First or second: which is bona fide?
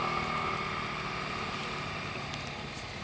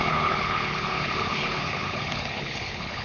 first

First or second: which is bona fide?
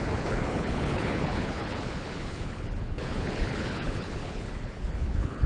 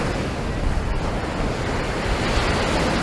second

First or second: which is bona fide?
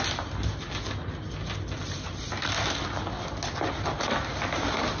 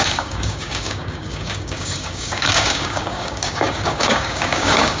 first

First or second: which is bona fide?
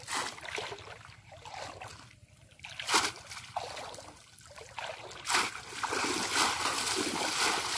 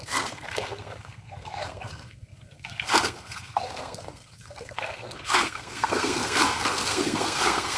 first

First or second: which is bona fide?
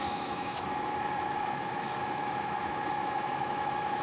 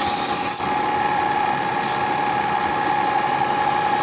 second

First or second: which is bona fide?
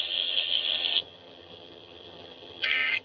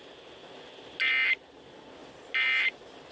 second